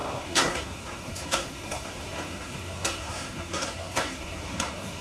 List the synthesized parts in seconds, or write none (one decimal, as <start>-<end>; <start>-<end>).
0.0-5.0